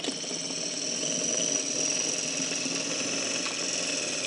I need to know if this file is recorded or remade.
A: recorded